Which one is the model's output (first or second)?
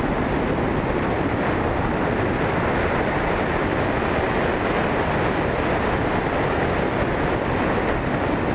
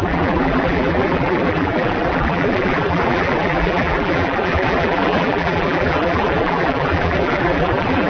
second